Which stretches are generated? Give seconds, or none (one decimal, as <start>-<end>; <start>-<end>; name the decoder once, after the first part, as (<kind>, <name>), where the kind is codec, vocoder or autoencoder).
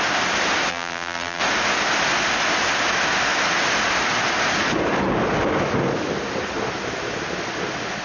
0.7-1.4 (vocoder, BigVGAN v2)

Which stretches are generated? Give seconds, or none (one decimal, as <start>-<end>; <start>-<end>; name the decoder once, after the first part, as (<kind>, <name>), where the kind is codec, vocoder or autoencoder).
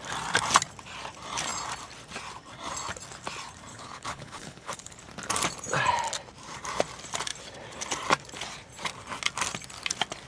3.7-4.9 (codec, HILCodec)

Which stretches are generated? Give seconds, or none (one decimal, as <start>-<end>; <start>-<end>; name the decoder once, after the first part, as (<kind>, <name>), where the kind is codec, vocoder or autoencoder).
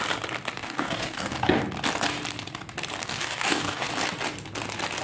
0.6-1.6 (codec, DAC); 3.0-3.9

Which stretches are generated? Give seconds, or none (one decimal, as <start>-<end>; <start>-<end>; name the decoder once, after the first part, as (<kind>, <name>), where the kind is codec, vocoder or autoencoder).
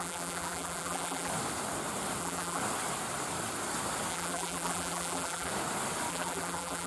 0.0-1.3 (vocoder, BigVGAN v2); 2.2-2.6; 4.1-5.5; 6.1-6.9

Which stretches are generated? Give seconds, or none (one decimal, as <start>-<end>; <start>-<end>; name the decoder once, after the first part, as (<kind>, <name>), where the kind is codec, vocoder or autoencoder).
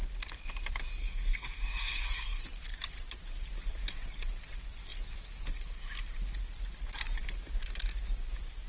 1.0-2.4 (codec, SNAC)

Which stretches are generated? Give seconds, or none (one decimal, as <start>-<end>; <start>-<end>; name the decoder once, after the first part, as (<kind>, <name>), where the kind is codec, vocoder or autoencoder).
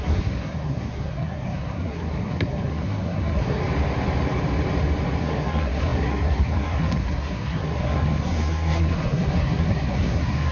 0.0-3.6 (codec, SNAC); 5.2-10.5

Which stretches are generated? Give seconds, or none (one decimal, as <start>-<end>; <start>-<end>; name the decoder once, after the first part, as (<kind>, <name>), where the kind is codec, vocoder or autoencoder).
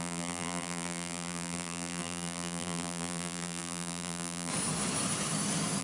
0.0-4.5 (vocoder, BigVGAN v2)